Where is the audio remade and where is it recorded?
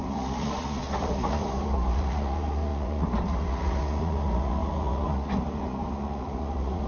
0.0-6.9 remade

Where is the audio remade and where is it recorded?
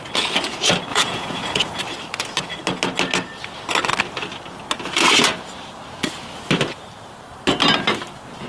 0.0-0.9 recorded; 0.9-1.8 remade; 1.8-8.5 recorded